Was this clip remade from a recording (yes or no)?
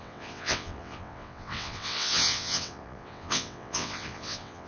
yes